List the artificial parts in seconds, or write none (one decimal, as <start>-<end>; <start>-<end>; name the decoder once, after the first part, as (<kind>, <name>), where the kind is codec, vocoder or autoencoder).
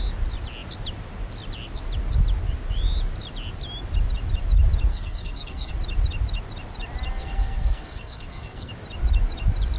4.9-5.7 (codec, SNAC); 7.2-8.7